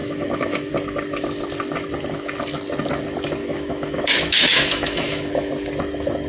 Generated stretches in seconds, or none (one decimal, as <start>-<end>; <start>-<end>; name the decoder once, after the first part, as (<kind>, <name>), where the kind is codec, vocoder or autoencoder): 0.0-0.7 (autoencoder, DAC-VAE); 3.4-5.5